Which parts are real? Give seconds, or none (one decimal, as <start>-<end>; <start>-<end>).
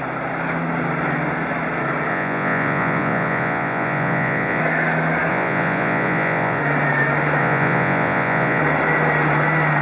0.0-2.1; 4.6-5.3; 6.6-7.4; 8.6-9.8